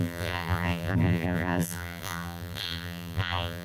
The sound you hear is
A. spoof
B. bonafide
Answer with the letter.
A